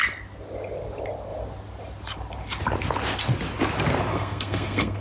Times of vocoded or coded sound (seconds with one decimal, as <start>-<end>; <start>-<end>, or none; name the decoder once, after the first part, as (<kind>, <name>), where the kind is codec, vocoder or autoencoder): 4.1-5.0 (codec, SNAC)